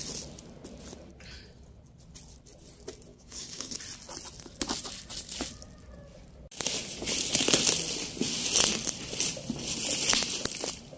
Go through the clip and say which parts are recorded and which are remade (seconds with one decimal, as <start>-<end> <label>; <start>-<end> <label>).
0.0-3.1 recorded; 3.1-3.8 remade; 3.8-11.0 recorded